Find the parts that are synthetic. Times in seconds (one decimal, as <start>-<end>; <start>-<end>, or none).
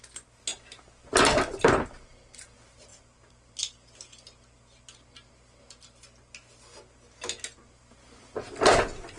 none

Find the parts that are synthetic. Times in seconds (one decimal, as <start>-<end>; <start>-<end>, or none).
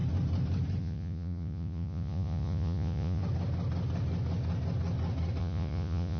0.8-3.2; 5.4-6.2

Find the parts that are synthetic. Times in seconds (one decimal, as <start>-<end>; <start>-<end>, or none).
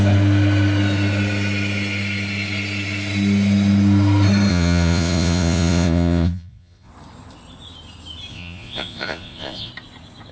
4.5-6.9; 8.3-9.7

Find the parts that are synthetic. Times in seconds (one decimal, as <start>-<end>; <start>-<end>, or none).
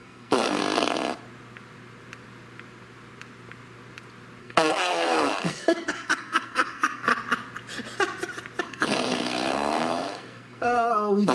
0.0-0.6; 4.4-7.1; 8.6-11.3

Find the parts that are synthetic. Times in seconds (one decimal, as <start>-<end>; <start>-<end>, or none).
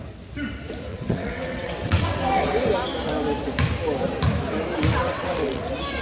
0.9-2.5; 4.9-5.6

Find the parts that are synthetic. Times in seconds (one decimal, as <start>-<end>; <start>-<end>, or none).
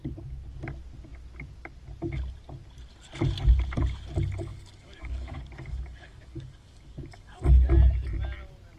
4.5-7.4